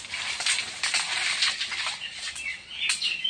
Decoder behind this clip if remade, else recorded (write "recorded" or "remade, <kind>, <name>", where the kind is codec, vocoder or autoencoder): recorded